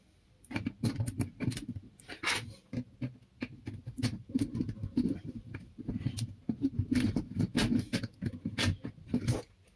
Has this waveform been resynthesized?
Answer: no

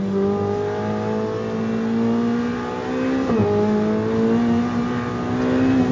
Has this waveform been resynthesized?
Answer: no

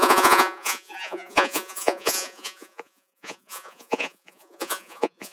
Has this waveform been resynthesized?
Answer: yes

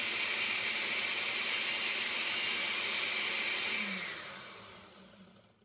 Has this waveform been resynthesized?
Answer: no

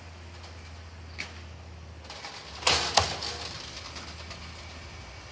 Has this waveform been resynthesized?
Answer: no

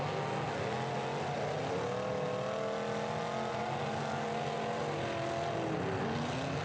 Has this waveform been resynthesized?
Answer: no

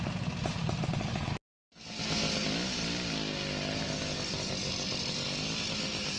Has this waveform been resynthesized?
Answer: no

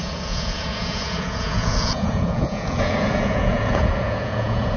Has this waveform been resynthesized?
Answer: yes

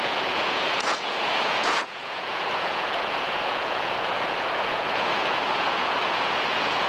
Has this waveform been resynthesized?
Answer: yes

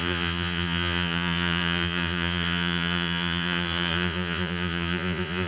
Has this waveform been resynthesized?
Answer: yes